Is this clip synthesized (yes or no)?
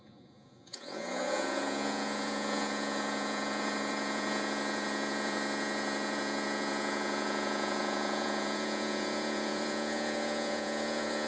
yes